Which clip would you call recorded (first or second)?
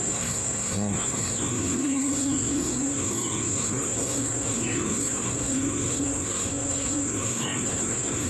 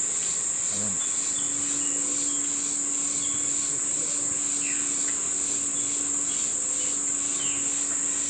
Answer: second